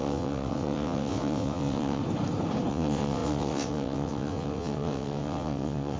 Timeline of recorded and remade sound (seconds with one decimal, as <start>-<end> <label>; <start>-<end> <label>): 0.0-2.0 remade; 2.0-2.7 recorded; 2.7-6.0 remade